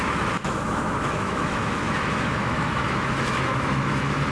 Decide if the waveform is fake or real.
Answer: fake